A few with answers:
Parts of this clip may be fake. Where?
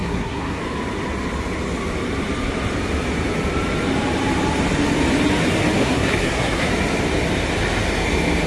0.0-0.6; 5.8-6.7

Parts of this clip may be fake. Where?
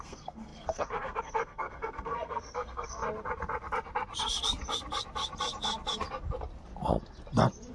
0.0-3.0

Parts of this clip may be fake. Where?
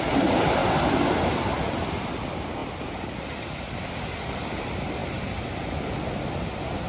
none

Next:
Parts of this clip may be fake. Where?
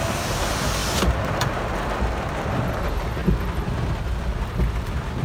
none